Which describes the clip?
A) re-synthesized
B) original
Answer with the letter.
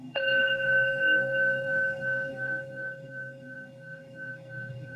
A